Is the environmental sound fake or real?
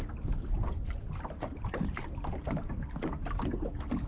real